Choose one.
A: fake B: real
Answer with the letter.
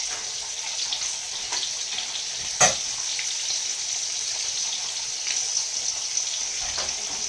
B